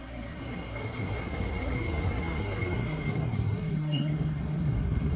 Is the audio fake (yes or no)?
yes